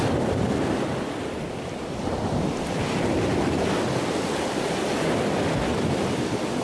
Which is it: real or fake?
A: real